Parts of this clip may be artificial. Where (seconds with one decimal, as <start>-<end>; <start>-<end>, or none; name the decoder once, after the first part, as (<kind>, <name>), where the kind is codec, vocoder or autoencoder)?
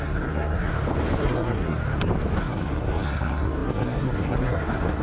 0.0-0.7 (codec, SNAC); 1.2-1.8; 2.4-5.0